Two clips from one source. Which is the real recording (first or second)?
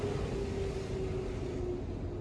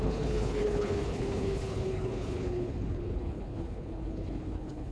first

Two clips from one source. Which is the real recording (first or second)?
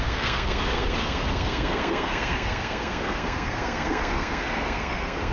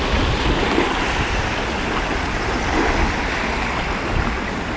second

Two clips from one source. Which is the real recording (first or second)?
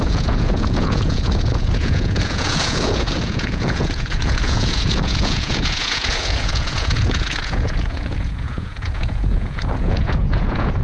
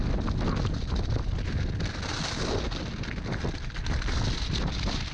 second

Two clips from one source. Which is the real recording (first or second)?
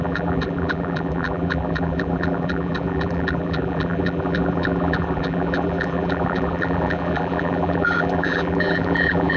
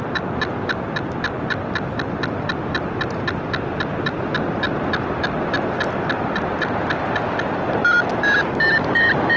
second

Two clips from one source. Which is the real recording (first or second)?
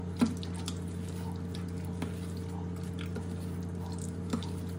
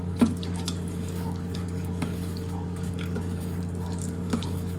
first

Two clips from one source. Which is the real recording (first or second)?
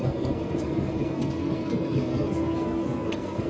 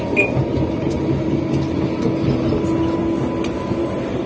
second